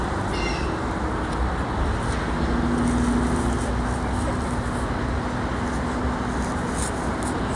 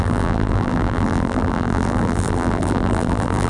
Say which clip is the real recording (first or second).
first